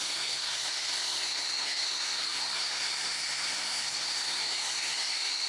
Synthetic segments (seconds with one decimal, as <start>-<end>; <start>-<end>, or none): 0.0-5.5